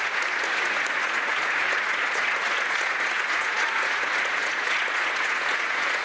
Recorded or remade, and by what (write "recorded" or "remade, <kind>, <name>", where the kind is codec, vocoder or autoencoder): remade, vocoder, Vocos